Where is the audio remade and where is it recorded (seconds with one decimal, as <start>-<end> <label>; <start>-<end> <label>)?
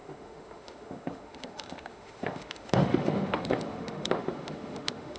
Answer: 0.0-5.2 remade